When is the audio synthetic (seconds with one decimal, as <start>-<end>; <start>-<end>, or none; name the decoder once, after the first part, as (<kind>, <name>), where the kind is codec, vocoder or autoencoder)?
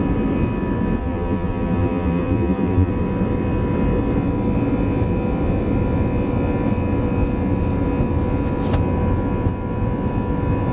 1.0-2.9 (vocoder, BigVGAN v2)